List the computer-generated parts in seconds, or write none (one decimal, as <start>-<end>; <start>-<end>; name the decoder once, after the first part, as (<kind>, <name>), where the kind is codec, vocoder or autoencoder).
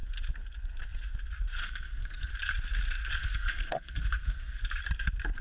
1.6-2.3 (codec, SNAC); 3.2-4.6